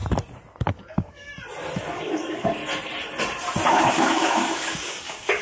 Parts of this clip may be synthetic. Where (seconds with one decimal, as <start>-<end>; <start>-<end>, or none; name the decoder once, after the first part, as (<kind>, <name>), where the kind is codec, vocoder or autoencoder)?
0.9-1.3 (codec, DAC); 1.9-2.6; 3.7-5.4